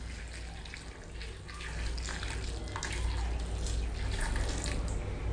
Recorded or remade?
recorded